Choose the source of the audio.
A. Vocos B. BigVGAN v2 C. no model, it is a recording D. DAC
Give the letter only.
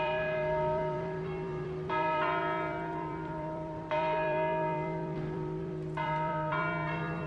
B